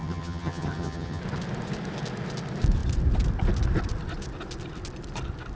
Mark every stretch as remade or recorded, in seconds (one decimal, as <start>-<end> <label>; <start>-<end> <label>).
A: 0.0-1.2 remade; 1.2-5.6 recorded